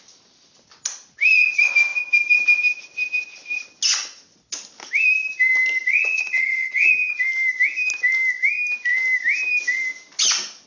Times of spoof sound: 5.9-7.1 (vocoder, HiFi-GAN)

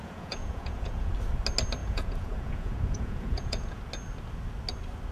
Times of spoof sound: 0.0-1.1 (vocoder, Vocos); 1.8-3.8